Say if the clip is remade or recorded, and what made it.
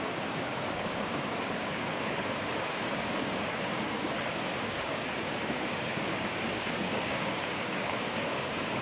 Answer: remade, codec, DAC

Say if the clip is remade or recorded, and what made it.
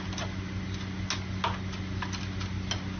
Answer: recorded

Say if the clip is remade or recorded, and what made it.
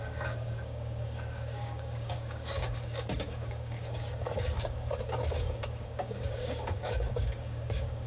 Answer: remade, codec, DAC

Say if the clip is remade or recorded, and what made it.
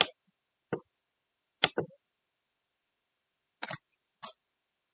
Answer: recorded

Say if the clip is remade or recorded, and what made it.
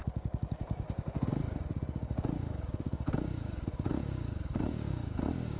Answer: remade, codec, DAC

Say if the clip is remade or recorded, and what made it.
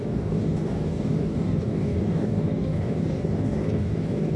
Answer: remade, codec, DAC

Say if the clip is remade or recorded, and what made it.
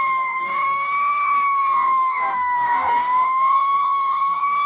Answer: remade, codec, DAC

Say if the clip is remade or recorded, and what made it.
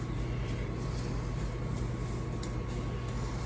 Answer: recorded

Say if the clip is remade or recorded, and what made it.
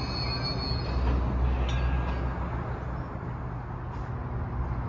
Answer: recorded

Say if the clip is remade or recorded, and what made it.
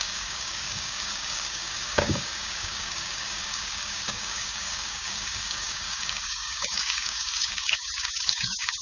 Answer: remade, codec, DAC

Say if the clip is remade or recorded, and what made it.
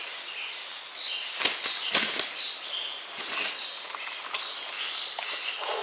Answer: recorded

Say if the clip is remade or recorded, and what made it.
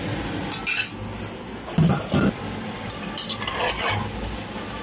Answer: recorded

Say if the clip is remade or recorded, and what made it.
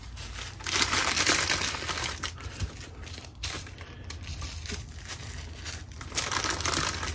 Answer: recorded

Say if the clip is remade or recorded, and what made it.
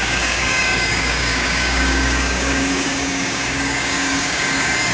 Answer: remade, codec, DAC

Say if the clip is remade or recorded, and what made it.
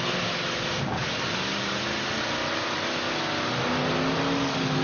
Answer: recorded